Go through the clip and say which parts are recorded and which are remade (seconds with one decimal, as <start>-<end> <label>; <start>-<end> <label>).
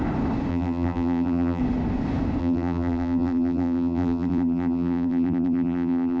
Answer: 0.0-0.5 recorded; 0.5-1.6 remade; 1.6-2.4 recorded; 2.4-6.2 remade